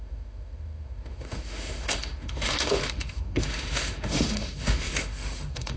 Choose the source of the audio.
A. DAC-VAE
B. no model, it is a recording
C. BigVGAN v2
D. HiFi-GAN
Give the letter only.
A